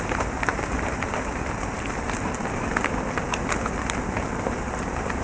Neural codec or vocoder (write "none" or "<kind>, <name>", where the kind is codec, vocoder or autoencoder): none